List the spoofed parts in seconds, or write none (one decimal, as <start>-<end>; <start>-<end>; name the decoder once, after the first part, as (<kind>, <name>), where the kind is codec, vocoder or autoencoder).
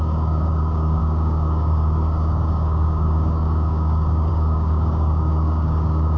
0.0-6.2 (codec, DAC)